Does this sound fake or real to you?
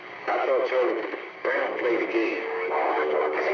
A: fake